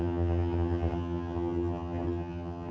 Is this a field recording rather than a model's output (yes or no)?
no